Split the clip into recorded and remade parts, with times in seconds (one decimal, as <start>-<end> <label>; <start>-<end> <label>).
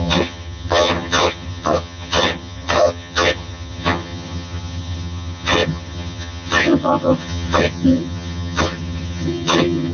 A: 0.0-9.9 remade